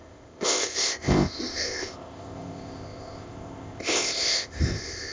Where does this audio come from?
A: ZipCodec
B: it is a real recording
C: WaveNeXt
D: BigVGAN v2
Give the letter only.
A